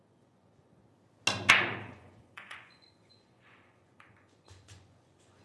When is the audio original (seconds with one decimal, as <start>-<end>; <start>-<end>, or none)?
0.8-1.5